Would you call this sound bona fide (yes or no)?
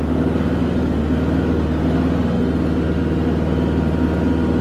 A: yes